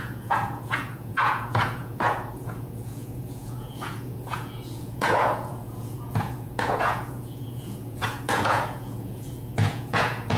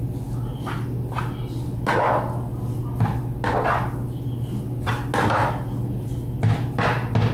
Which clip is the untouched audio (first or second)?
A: second